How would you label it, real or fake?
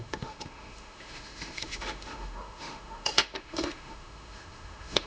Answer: fake